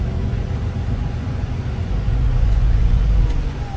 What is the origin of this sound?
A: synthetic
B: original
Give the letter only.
A